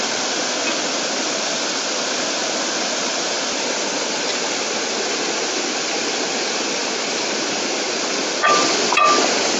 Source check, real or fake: real